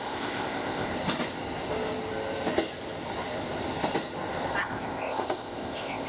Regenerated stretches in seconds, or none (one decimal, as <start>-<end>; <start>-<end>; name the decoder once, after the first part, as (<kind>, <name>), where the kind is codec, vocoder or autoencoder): 0.0-0.9 (codec, ZipCodec); 4.6-6.1